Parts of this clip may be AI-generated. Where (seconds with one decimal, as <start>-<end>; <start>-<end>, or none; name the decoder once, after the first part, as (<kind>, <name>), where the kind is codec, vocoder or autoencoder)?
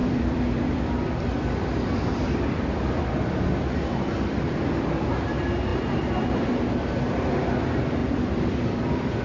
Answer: 0.0-4.0 (vocoder, BigVGAN v2); 8.0-9.2